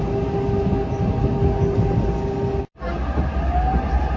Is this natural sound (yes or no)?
yes